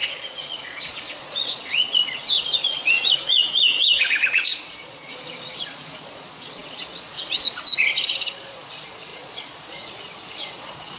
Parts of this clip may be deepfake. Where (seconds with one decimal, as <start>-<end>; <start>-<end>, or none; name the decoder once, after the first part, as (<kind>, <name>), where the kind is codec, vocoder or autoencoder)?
0.0-11.0 (vocoder, Vocos)